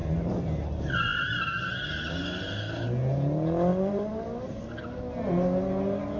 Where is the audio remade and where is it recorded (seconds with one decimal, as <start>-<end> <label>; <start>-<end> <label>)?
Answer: 0.0-0.6 remade; 0.6-1.1 recorded; 1.1-1.6 remade; 1.6-3.7 recorded; 3.7-4.2 remade; 4.2-6.2 recorded